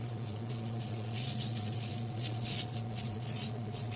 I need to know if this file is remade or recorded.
remade